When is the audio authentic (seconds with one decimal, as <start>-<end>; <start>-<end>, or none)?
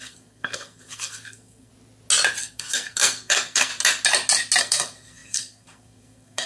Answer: 1.7-2.4; 3.7-4.6